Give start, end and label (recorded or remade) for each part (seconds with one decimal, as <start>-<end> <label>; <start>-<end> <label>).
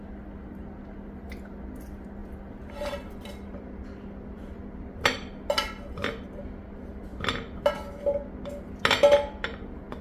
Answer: 0.0-2.2 recorded; 2.2-5.3 remade; 5.3-10.0 recorded